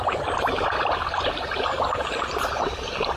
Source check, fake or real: real